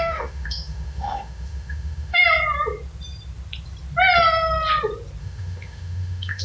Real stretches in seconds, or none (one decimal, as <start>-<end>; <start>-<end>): 2.2-5.2